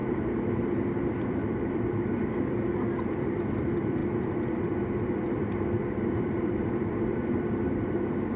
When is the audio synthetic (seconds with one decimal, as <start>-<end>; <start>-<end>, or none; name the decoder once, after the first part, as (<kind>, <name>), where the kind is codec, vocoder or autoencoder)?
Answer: 1.2-8.4 (vocoder, BigVGAN v2)